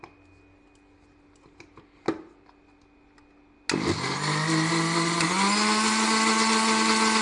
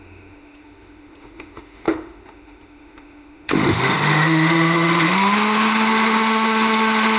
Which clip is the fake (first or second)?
second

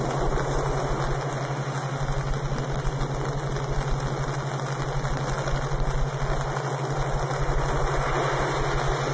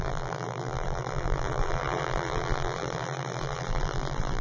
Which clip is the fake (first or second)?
second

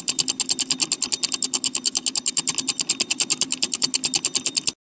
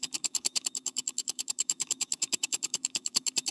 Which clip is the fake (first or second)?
second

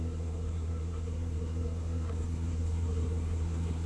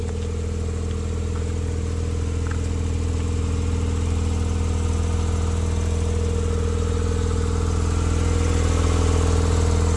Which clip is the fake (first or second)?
first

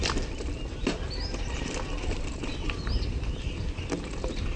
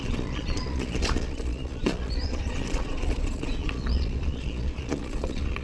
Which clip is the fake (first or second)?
second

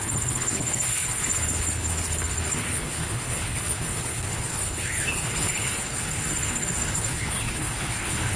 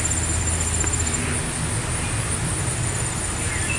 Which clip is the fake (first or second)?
first